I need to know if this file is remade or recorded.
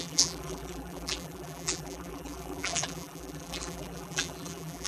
remade